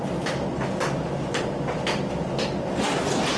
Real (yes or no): yes